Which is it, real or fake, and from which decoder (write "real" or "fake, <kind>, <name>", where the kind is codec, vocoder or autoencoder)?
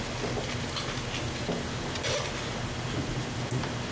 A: real